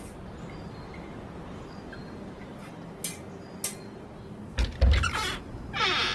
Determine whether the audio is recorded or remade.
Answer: recorded